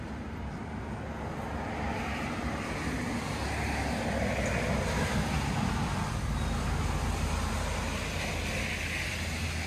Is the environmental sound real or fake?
real